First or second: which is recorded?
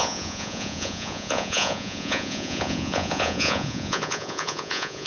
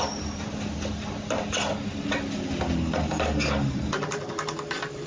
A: second